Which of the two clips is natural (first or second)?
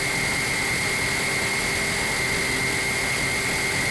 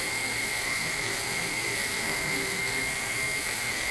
first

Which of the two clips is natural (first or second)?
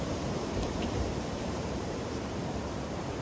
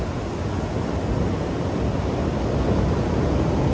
second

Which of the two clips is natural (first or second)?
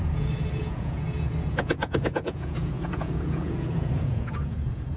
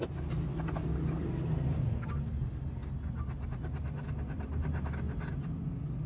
second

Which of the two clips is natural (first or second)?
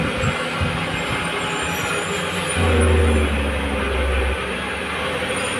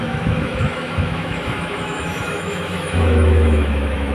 first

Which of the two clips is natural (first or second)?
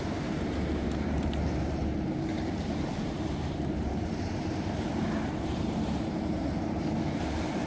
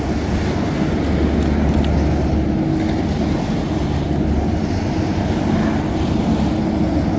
second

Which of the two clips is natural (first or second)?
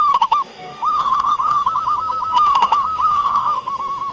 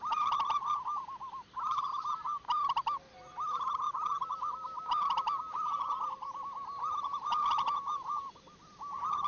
second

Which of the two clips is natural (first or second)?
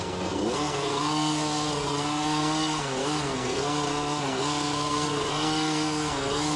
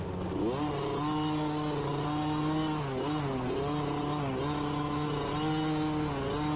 second